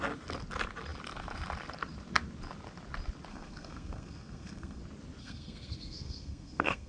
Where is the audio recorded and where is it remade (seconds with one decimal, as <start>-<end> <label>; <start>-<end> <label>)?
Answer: 0.0-3.3 recorded; 3.3-4.8 remade; 4.8-5.2 recorded; 5.2-6.9 remade